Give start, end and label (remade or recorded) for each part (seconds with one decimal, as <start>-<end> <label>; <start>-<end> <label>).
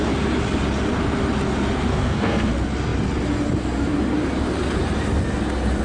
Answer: 0.0-1.9 recorded; 1.9-2.5 remade; 2.5-5.8 recorded